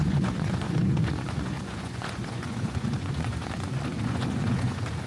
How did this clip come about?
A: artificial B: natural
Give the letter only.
A